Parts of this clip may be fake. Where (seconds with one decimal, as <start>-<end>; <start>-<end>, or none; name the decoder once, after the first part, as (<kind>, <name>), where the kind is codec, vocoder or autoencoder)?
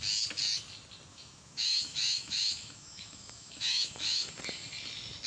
1.1-4.3 (autoencoder, DAC-VAE)